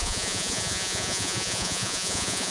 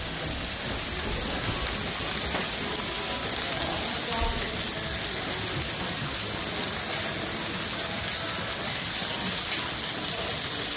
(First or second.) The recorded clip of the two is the second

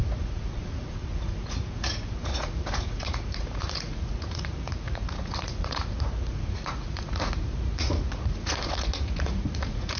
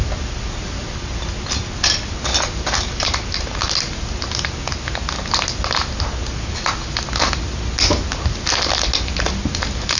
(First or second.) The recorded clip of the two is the second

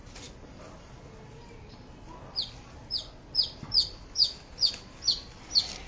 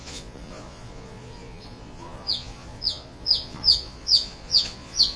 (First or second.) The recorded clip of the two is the first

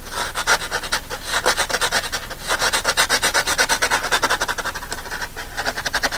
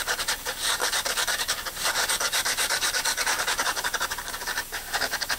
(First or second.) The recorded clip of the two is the first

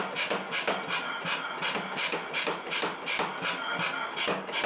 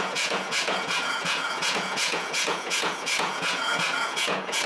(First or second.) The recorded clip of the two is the first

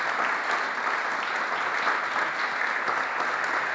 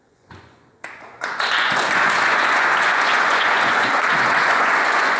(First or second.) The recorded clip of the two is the first